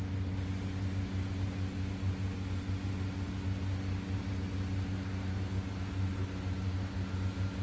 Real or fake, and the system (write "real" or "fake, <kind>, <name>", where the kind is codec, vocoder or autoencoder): real